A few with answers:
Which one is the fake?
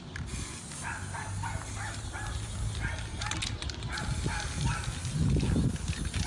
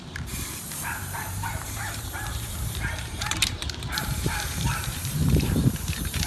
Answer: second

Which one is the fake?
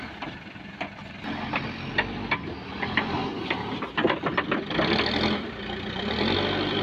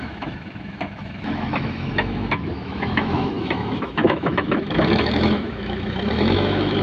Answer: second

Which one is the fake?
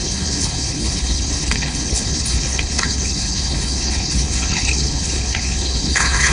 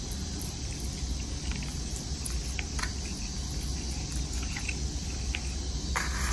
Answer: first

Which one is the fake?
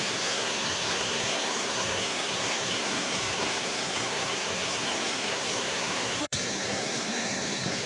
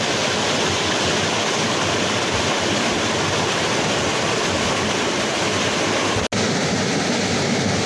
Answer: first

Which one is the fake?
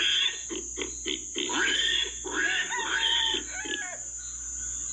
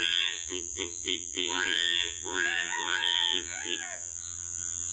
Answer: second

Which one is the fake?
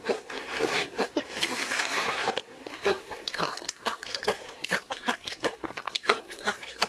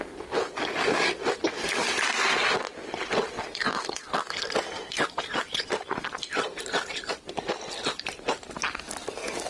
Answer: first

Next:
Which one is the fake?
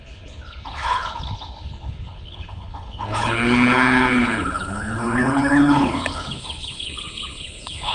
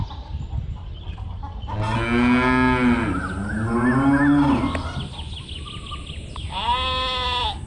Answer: first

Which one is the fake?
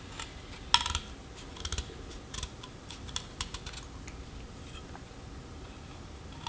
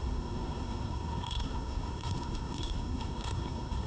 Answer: second